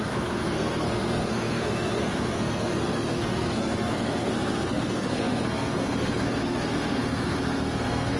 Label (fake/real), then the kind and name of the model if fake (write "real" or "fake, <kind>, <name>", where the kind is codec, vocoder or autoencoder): fake, codec, SNAC